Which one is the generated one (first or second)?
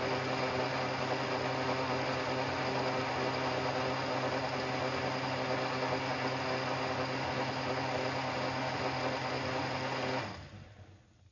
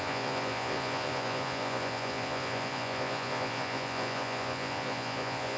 second